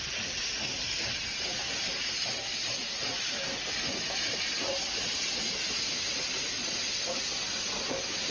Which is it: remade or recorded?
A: recorded